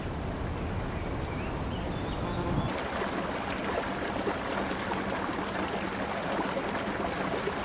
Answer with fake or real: real